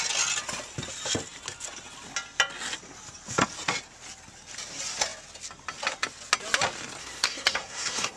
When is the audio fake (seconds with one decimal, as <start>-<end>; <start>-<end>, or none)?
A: 7.0-8.2